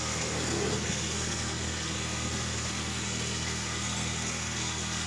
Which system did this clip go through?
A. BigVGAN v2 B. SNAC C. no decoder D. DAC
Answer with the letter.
B